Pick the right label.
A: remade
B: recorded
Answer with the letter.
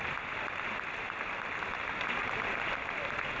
B